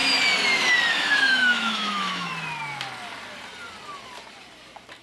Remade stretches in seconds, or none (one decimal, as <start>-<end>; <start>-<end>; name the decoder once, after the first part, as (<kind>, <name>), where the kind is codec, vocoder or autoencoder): 0.9-2.3 (autoencoder, DAC-VAE)